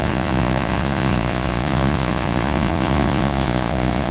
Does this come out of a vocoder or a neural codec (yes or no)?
yes